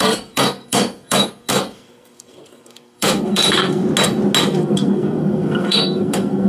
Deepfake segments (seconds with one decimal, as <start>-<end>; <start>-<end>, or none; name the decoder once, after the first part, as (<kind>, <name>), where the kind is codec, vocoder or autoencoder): 0.0-3.8 (codec, SNAC); 4.4-6.5